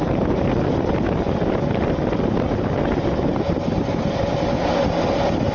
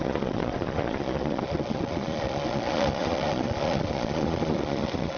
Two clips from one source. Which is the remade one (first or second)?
second